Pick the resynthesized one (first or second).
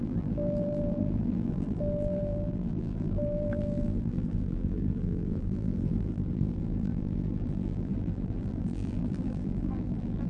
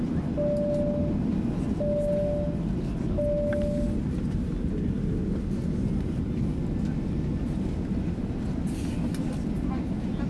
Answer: first